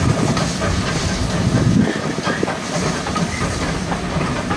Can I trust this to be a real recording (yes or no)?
yes